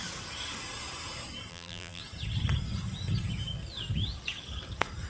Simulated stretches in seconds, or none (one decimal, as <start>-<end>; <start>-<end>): 1.5-2.0